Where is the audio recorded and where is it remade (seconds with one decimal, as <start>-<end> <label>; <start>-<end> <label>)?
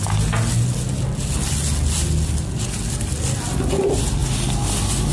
0.0-5.1 recorded